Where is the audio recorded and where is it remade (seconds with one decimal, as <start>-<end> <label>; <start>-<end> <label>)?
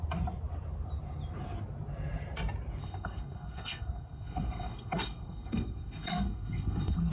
0.0-2.8 recorded; 2.8-7.1 remade